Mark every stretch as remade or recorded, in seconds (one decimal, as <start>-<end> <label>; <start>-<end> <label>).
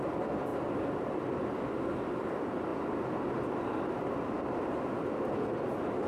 0.0-0.5 remade; 0.5-1.0 recorded; 1.0-2.7 remade; 2.7-6.1 recorded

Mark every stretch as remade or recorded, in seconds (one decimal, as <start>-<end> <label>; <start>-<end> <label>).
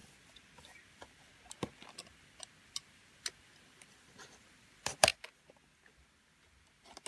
0.0-1.3 remade; 1.3-1.8 recorded; 1.8-5.1 remade; 5.1-7.1 recorded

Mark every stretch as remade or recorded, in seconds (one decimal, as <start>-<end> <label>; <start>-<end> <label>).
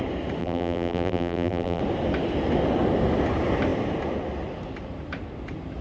0.0-0.4 recorded; 0.4-1.8 remade; 1.8-5.8 recorded